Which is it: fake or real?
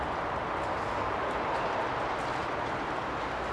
real